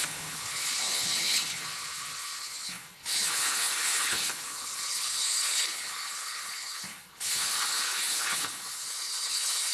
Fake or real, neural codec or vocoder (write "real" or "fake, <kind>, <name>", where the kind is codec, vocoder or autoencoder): fake, codec, HILCodec